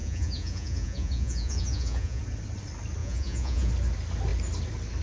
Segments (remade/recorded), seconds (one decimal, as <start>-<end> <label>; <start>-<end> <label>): 0.0-2.2 remade; 2.2-3.0 recorded; 3.0-3.7 remade; 3.7-5.0 recorded